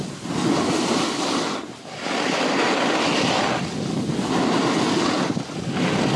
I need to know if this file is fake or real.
real